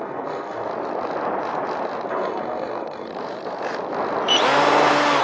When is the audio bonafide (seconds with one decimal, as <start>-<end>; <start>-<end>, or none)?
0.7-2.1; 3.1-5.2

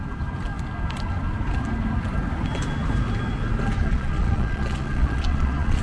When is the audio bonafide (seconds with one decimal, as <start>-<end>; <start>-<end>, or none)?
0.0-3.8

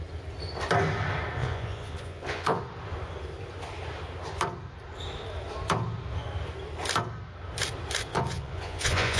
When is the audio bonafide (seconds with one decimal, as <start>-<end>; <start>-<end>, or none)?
0.0-1.4; 2.6-8.1